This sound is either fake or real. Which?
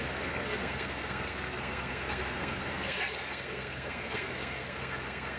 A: fake